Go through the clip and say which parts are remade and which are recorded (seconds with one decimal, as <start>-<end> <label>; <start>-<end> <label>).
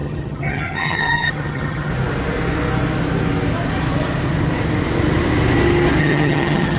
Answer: 0.0-1.9 remade; 1.9-6.0 recorded; 6.0-6.8 remade